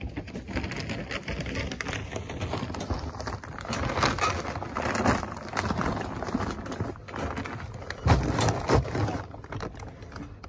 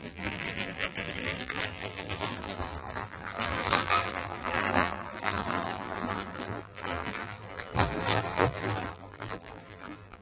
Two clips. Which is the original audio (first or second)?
first